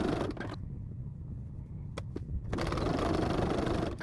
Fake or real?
real